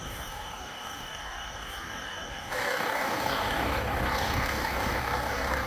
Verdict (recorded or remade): remade